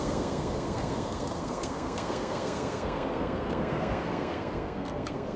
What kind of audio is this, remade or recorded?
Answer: remade